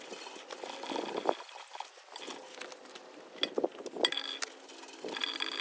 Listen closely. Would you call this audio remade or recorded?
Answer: recorded